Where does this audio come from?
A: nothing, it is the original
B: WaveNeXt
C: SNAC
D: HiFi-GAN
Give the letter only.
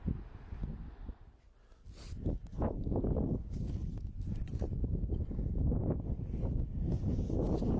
A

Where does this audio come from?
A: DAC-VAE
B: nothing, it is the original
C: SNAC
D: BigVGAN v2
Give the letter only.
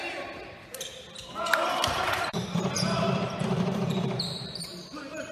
D